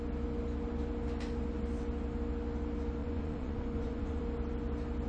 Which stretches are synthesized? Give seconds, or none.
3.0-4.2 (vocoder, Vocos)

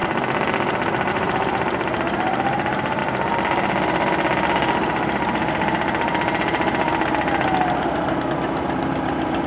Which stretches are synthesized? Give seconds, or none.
1.1-3.0 (vocoder, BigVGAN v2); 8.3-9.5

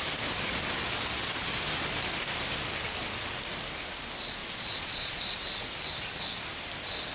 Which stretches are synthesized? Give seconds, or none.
4.4-5.2 (vocoder, Vocos)